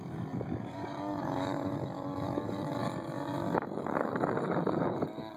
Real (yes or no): no